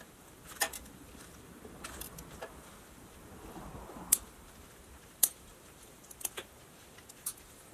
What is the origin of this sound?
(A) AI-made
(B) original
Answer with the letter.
A